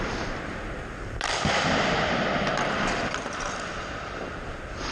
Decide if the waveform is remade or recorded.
remade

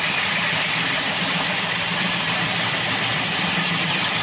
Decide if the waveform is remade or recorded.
remade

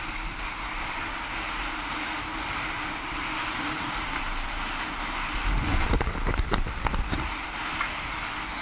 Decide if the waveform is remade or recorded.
recorded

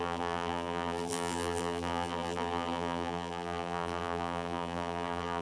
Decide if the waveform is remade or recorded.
remade